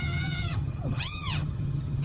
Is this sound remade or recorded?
remade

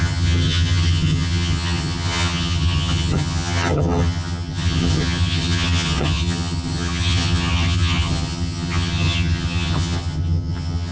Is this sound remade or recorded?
remade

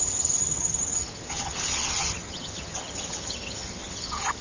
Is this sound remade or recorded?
remade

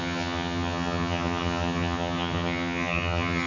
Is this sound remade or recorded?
remade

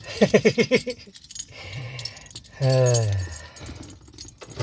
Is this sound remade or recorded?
recorded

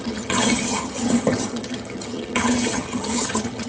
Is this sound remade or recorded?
remade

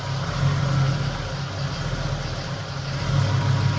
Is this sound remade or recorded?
recorded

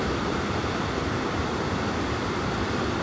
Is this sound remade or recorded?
recorded